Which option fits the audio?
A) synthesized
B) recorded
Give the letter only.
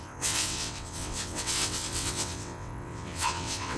A